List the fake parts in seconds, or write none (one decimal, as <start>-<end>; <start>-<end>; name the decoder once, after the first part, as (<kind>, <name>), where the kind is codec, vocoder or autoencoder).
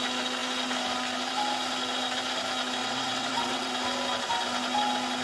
2.8-3.7 (vocoder, WaveNeXt)